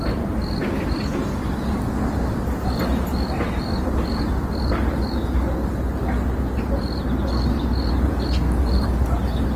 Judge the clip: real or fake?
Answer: real